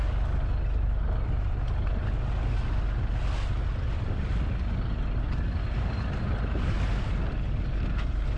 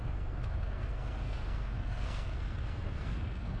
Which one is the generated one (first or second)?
second